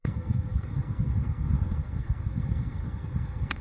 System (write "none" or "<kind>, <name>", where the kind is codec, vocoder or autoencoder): codec, SNAC